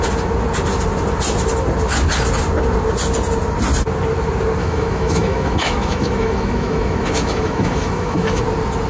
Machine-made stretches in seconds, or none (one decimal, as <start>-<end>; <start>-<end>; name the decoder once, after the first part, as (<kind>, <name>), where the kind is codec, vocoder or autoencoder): 4.6-8.4 (autoencoder, DAC-VAE)